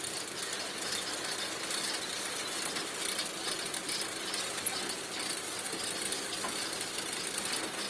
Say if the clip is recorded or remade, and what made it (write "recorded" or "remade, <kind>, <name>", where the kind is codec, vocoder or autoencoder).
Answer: recorded